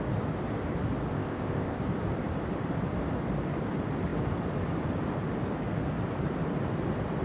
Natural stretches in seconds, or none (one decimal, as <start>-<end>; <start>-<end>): 0.0-1.1; 1.8-7.2